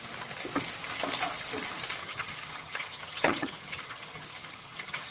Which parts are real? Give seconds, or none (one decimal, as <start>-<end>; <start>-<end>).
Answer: 0.0-2.0